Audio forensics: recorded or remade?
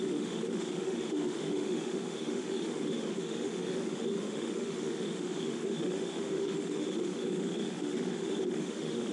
remade